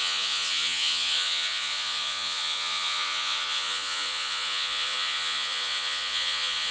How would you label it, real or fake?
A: fake